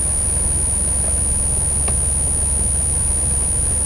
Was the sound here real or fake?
real